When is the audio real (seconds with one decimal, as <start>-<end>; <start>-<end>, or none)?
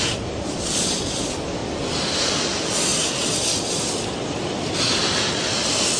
1.6-2.1